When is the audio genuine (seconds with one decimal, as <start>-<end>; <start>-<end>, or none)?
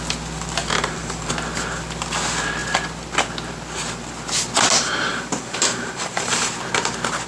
0.0-0.6; 1.3-5.1; 6.5-7.3